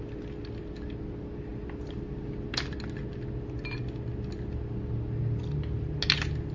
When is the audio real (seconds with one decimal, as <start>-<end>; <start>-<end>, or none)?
0.0-6.5